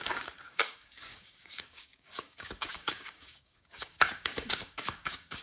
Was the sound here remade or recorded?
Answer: remade